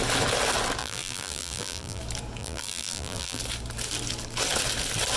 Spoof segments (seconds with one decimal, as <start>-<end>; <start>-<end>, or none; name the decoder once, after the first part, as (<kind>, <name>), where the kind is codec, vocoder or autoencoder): 0.8-2.0 (vocoder, BigVGAN v2); 2.4-3.4